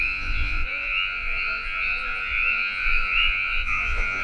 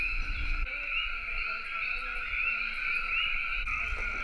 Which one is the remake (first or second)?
first